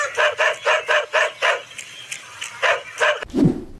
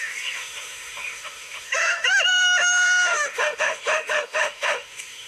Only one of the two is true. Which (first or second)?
first